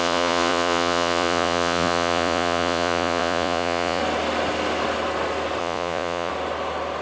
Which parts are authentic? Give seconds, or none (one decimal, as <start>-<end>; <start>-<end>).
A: 4.0-5.6; 6.3-7.0